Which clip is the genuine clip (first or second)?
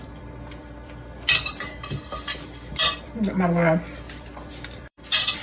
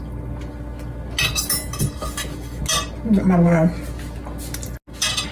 second